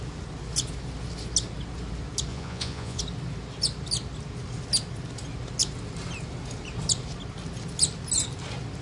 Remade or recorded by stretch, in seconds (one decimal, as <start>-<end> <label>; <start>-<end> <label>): 0.0-2.3 recorded; 2.3-3.0 remade; 3.0-8.8 recorded